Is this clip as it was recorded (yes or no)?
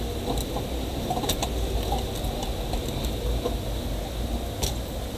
yes